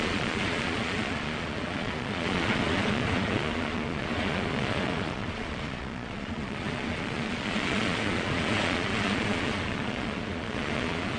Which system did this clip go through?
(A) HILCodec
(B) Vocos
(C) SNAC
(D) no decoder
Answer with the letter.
B